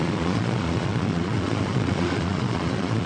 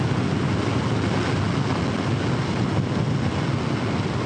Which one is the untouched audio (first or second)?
second